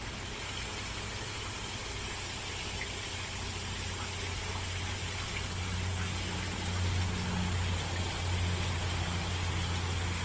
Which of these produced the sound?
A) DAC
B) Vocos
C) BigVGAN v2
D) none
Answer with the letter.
D